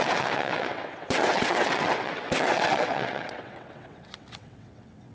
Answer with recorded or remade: remade